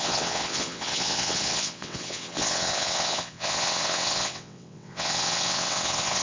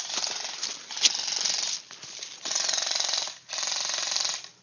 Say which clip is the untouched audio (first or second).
second